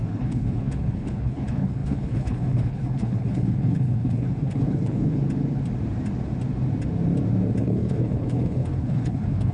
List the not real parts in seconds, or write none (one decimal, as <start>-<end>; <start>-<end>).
0.0-5.2; 7.6-9.5